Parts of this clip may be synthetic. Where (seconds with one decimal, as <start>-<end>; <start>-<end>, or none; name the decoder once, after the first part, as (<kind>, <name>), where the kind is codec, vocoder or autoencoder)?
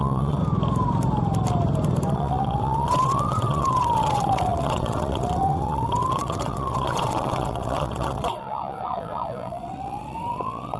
0.0-0.4 (vocoder, WaveNeXt); 2.1-10.8